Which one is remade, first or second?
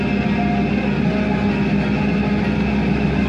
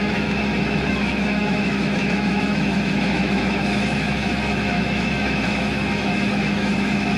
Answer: second